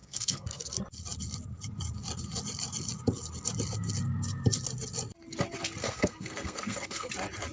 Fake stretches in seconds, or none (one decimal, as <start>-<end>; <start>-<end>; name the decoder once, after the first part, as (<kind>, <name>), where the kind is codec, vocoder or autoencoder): 0.0-0.7 (codec, SNAC); 5.8-7.1